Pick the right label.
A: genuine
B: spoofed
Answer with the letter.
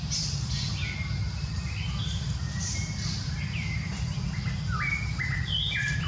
A